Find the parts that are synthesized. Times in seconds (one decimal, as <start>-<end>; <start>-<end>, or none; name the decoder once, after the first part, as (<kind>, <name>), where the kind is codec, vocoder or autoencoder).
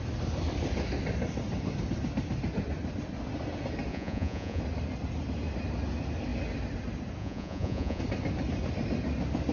3.9-4.6 (vocoder, Vocos); 7.2-8.0